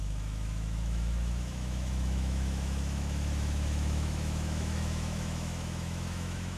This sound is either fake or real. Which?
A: fake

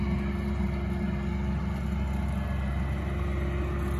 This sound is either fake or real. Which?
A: real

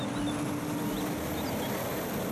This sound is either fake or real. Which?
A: real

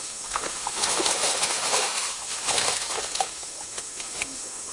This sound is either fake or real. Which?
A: fake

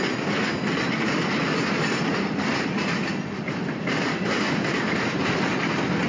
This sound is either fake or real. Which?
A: real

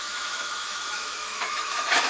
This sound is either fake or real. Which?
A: fake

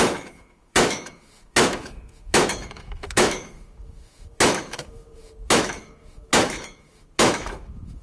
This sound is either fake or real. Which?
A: fake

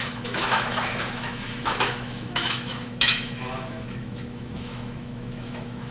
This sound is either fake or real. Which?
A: fake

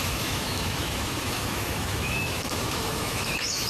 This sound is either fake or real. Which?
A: fake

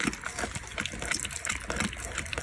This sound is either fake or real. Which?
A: real